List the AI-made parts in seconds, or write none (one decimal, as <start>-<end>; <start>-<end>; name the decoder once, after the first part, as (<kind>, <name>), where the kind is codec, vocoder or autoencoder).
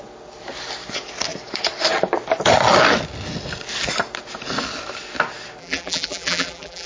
5.6-6.9 (vocoder, BigVGAN v2)